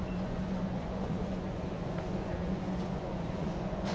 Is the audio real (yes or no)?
no